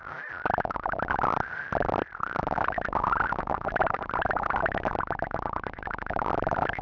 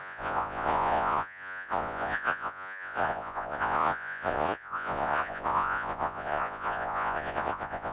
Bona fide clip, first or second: first